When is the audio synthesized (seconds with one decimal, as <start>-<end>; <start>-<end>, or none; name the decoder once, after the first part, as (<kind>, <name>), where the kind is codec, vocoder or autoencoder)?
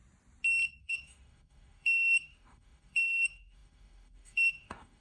0.8-5.0 (autoencoder, DAC-VAE)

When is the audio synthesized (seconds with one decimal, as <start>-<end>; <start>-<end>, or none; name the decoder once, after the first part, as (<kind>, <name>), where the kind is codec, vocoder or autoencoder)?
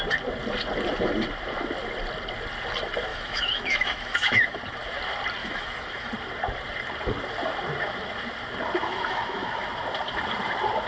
3.1-4.6 (autoencoder, DAC-VAE); 5.4-6.1; 8.8-9.7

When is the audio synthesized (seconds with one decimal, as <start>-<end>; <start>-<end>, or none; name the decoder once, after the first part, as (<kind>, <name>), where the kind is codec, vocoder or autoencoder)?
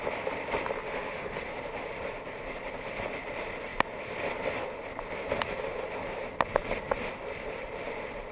0.9-1.5 (autoencoder, DAC-VAE)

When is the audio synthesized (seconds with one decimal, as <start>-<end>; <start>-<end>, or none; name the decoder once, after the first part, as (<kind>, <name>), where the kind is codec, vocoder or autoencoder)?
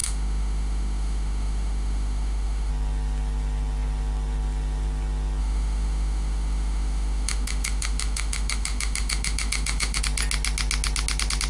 0.0-2.7 (autoencoder, DAC-VAE); 5.4-10.0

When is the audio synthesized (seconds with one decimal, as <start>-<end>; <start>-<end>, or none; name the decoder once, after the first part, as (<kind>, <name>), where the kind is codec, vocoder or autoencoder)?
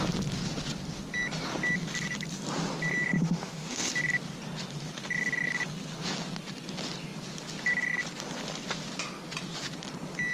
3.2-3.9 (autoencoder, DAC-VAE)